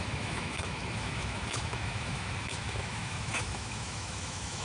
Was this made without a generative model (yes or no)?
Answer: no